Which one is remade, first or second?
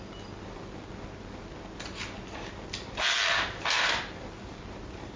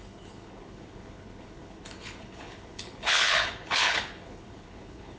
second